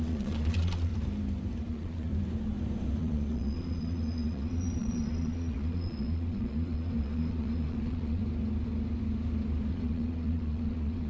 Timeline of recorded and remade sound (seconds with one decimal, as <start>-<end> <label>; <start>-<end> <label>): 0.0-0.9 remade; 0.9-1.7 recorded; 1.7-2.1 remade; 2.1-3.0 recorded; 3.0-8.2 remade; 8.2-9.7 recorded; 9.7-11.1 remade